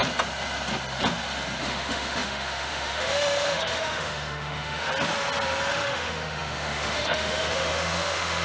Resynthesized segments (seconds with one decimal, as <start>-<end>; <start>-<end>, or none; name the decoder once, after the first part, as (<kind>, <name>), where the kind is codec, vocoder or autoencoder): 1.6-4.9 (autoencoder, DAC-VAE); 5.7-8.4